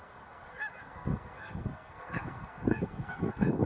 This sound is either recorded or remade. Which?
remade